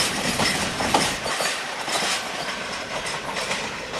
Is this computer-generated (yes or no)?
yes